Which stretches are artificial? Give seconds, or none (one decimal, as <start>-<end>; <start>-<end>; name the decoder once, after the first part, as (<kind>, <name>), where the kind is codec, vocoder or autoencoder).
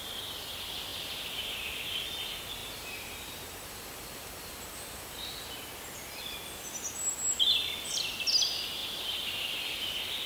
2.6-5.6 (vocoder, BigVGAN v2)